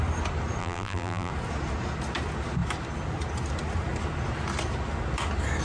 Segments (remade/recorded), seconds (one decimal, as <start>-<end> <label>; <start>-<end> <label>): 0.0-0.6 recorded; 0.6-1.3 remade; 1.3-5.6 recorded